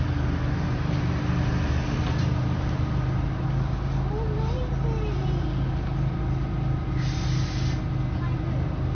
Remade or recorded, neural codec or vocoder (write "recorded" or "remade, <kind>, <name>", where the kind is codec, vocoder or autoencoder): recorded